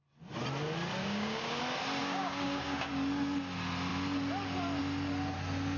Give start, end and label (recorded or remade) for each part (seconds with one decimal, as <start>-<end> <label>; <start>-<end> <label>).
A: 0.0-1.0 recorded; 1.0-1.6 remade; 1.6-2.0 recorded; 2.0-2.9 remade; 2.9-5.8 recorded